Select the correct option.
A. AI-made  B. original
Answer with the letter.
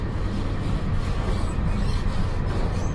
B